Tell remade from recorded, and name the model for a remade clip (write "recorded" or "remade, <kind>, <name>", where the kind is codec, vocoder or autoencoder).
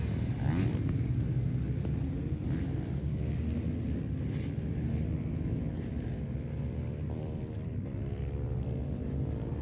recorded